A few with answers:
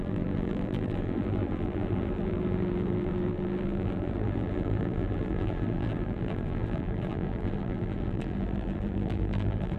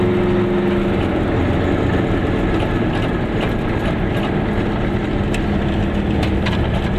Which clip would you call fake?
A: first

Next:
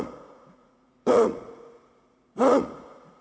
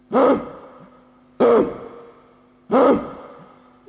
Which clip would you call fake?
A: first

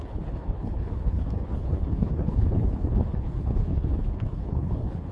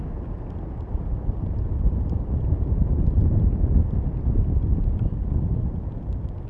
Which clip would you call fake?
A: first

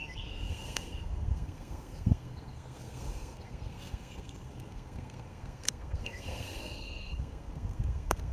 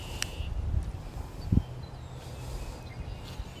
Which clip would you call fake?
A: first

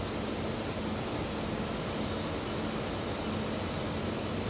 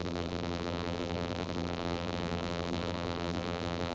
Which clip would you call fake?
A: second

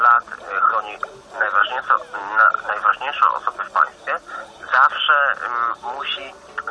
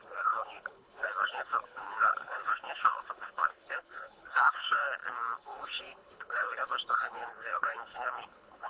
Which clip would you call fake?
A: second